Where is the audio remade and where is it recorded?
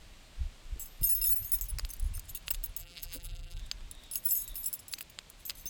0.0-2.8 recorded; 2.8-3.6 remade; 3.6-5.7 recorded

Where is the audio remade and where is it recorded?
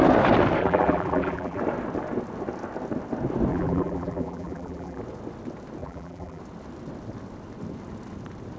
0.0-0.6 recorded; 0.6-1.6 remade; 1.6-3.5 recorded; 3.5-5.0 remade; 5.0-5.8 recorded; 5.8-6.4 remade; 6.4-8.6 recorded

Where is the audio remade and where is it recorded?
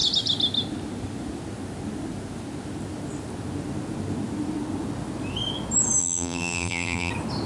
0.0-6.0 recorded; 6.0-7.1 remade; 7.1-7.5 recorded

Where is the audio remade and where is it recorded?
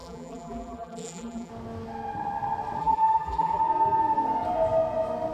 0.0-1.5 remade; 1.5-2.8 recorded; 2.8-3.6 remade; 3.6-5.3 recorded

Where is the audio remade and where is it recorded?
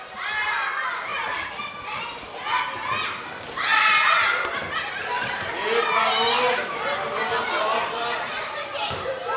0.0-7.7 recorded; 7.7-9.4 remade